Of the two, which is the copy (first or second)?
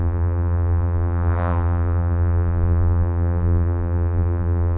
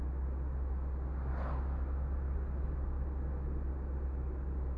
first